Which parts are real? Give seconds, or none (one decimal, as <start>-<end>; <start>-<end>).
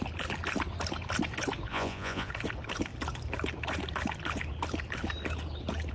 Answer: 0.0-1.7; 2.3-5.9